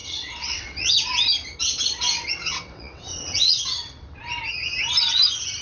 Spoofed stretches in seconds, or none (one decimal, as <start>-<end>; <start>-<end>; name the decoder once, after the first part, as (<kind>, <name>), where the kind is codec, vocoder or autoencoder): 0.0-1.1 (vocoder, WaveNeXt); 2.4-4.2